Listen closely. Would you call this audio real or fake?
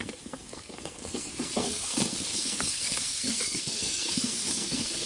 fake